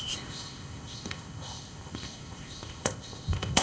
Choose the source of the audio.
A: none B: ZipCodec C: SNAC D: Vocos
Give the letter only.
B